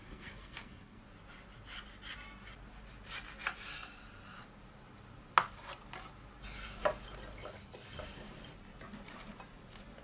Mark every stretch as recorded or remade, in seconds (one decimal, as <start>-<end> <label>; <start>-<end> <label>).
0.0-1.0 remade; 1.0-10.0 recorded